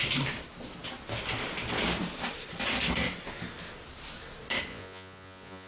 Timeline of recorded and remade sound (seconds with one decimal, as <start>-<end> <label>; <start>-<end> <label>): 0.0-4.7 recorded; 4.7-5.7 remade